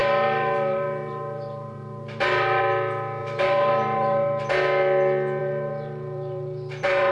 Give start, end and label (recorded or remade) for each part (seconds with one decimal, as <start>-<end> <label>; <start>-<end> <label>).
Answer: 0.0-2.6 remade; 2.6-3.2 recorded; 3.2-4.4 remade; 4.4-5.4 recorded; 5.4-7.1 remade